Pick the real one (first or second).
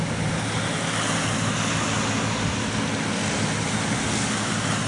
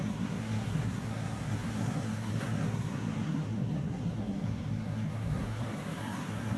first